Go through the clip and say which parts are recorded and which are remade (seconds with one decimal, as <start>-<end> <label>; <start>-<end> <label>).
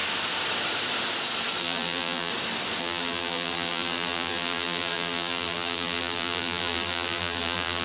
0.0-1.6 recorded; 1.6-2.3 remade; 2.3-2.8 recorded; 2.8-7.8 remade